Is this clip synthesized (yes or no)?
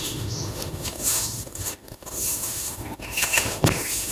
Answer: yes